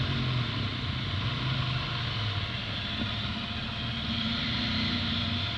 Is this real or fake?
real